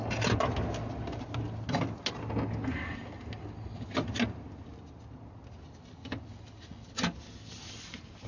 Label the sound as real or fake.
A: real